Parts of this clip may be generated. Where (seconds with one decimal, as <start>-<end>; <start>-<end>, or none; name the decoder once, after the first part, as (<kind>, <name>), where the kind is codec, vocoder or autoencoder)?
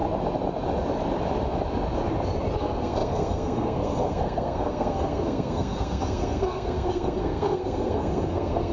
2.6-8.7 (codec, SNAC)